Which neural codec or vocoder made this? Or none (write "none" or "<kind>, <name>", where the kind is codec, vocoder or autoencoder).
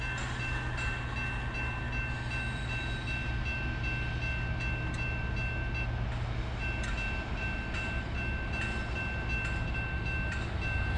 none